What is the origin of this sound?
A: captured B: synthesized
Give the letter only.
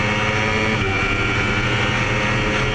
A